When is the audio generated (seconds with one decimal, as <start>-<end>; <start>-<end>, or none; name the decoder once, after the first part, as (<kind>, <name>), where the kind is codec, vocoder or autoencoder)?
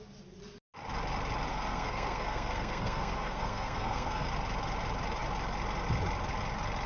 1.5-4.3 (codec, SNAC)